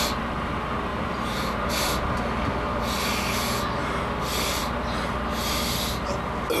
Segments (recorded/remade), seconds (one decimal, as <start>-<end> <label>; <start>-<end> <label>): 0.0-0.9 recorded; 0.9-1.7 remade; 1.7-6.6 recorded